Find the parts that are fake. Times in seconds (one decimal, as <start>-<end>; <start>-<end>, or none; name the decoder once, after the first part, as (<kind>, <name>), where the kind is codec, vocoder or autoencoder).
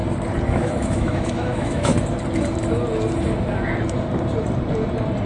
0.5-1.9 (autoencoder, DAC-VAE)